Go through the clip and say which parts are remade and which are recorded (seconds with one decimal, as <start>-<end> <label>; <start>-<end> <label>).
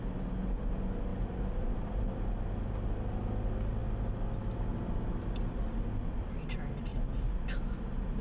0.0-1.1 recorded; 1.1-2.1 remade; 2.1-8.2 recorded